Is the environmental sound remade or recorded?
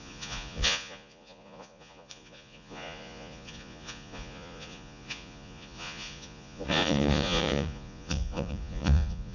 remade